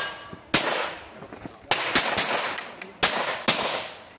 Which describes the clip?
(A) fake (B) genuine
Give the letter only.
B